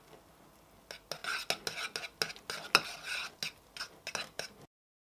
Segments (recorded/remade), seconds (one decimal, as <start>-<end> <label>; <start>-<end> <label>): 0.0-5.0 recorded